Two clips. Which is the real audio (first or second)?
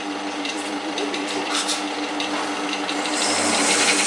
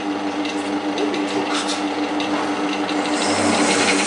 second